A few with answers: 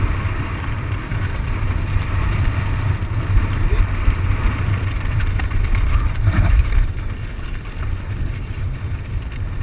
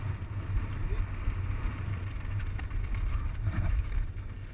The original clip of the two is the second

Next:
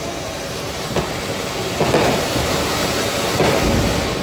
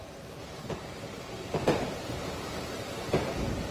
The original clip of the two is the first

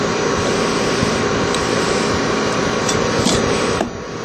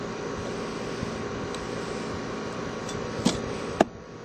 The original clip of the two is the second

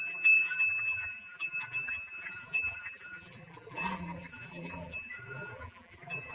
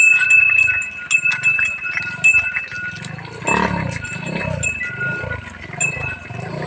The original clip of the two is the second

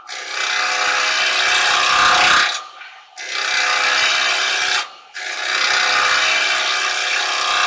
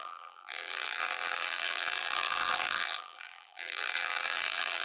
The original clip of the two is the first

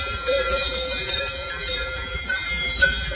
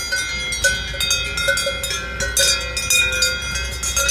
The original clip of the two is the second